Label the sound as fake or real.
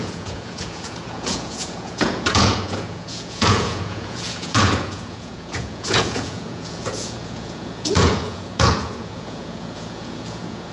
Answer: fake